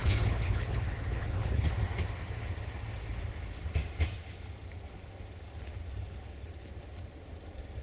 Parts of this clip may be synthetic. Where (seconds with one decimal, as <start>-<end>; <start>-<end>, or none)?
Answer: 0.0-1.7